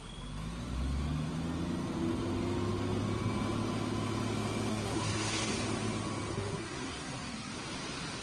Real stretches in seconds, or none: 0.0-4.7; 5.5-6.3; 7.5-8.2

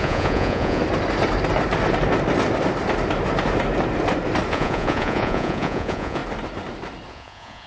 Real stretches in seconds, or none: 0.8-4.5; 6.2-7.1